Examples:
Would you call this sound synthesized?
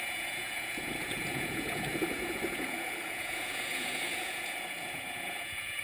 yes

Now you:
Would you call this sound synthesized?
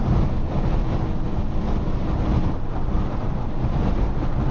no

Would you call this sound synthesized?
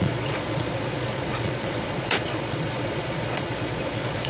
yes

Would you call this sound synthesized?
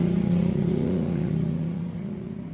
yes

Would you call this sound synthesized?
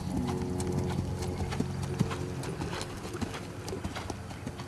no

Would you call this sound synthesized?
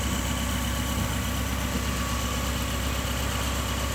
no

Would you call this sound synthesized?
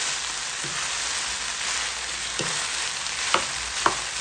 no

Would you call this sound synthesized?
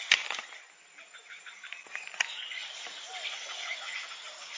no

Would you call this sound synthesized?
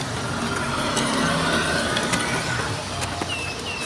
no